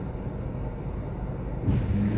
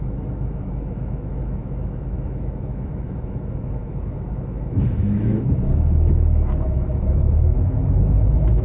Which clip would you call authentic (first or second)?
first